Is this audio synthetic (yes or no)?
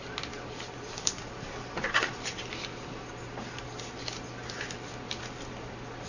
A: no